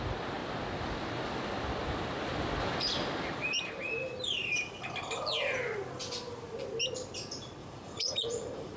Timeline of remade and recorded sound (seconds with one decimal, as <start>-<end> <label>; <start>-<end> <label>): 0.0-7.6 recorded; 7.6-8.8 remade